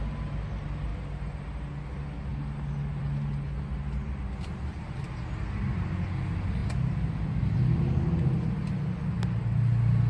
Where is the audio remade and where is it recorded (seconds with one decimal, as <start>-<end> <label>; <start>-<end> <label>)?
0.0-10.1 recorded